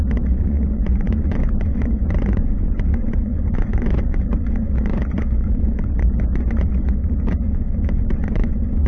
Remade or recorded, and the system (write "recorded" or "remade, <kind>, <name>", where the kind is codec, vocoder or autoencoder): remade, vocoder, Vocos